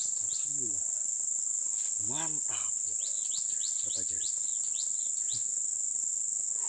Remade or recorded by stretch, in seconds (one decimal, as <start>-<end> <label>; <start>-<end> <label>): 0.0-6.7 recorded

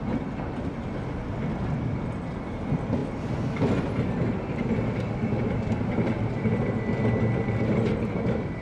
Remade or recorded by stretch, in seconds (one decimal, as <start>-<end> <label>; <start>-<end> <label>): 0.0-8.6 recorded

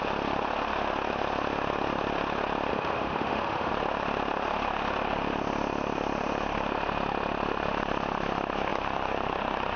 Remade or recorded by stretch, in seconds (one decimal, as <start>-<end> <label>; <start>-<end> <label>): 0.0-2.7 recorded; 2.7-3.7 remade; 3.7-9.8 recorded

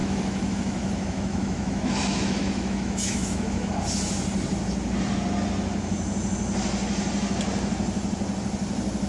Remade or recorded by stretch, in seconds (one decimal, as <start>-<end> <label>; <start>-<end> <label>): 0.0-3.7 remade; 3.7-9.1 recorded

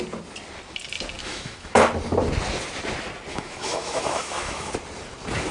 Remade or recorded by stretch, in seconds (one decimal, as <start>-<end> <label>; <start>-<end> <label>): 0.0-1.2 recorded; 1.2-1.8 remade; 1.8-3.3 recorded; 3.3-4.7 remade; 4.7-5.5 recorded

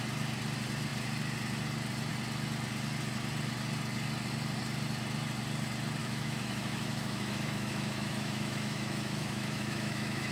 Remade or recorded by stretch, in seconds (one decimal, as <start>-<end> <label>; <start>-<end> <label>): 0.0-6.0 recorded; 6.0-10.3 remade

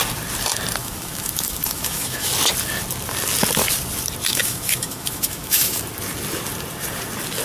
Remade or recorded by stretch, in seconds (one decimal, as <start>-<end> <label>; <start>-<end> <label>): 0.0-0.8 recorded; 0.8-2.3 remade; 2.3-4.3 recorded; 4.3-5.8 remade; 5.8-7.4 recorded